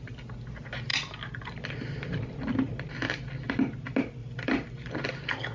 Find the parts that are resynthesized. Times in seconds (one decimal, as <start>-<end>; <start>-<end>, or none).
4.2-4.9